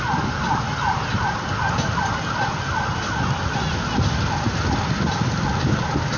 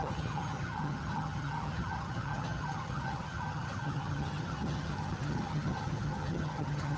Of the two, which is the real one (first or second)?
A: first